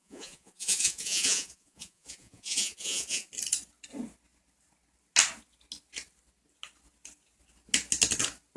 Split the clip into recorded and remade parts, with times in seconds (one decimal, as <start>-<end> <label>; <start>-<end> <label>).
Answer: 0.0-3.3 remade; 3.3-8.6 recorded